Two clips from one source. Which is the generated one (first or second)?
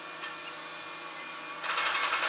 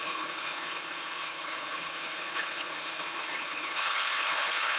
second